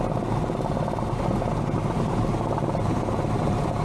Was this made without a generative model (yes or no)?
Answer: yes